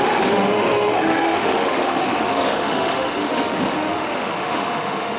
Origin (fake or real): fake